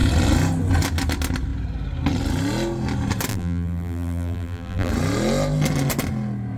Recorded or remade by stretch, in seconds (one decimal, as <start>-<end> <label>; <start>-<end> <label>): 0.0-3.3 recorded; 3.3-4.9 remade; 4.9-6.6 recorded